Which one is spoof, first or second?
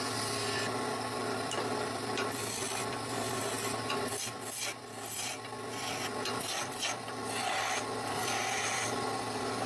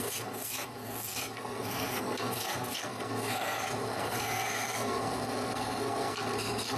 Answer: second